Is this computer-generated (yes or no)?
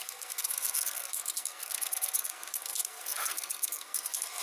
yes